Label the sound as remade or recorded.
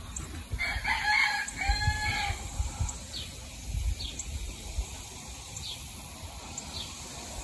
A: recorded